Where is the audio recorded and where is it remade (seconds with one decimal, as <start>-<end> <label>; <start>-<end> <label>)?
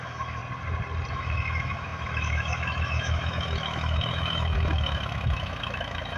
0.0-0.4 remade; 0.4-1.1 recorded; 1.1-6.2 remade